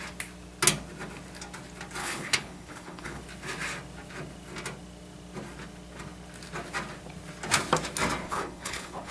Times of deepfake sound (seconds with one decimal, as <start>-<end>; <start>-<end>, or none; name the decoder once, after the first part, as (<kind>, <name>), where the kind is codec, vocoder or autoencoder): 2.0-3.2 (codec, HILCodec); 8.2-9.1